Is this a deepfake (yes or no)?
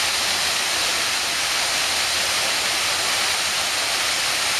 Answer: no